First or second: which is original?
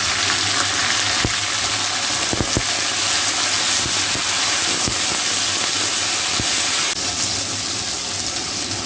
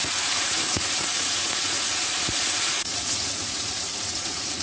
first